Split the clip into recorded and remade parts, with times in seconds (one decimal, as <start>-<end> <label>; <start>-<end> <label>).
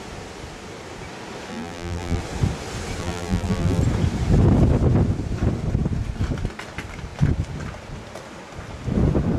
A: 0.0-1.5 recorded; 1.5-2.2 remade; 2.2-3.0 recorded; 3.0-3.8 remade; 3.8-9.4 recorded